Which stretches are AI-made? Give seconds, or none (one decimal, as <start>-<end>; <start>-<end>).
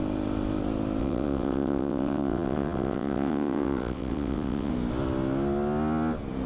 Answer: 1.0-4.7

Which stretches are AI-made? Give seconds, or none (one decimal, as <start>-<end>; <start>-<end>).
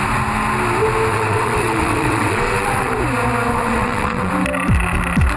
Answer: 1.1-2.9; 3.5-4.3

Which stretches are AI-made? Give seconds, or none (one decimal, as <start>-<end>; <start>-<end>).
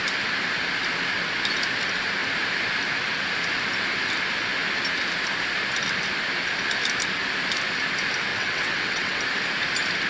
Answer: 8.3-9.2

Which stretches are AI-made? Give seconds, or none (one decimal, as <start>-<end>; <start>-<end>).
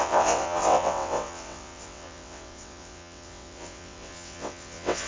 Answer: 0.0-5.1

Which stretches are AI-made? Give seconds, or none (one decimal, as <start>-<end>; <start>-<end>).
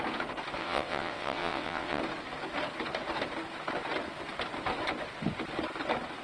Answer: 0.6-2.0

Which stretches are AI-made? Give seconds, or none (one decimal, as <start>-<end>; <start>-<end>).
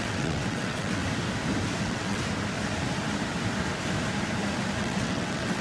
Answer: 0.0-1.0; 1.8-2.2; 4.8-5.6